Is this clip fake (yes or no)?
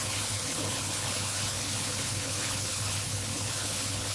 yes